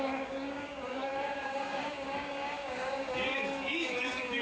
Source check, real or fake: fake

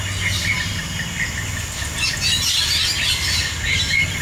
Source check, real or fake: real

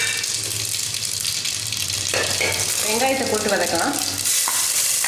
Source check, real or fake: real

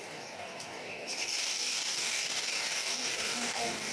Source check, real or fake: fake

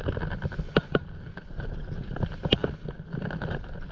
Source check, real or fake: real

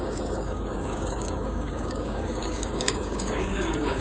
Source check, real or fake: fake